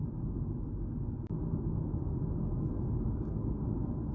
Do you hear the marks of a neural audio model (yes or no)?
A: no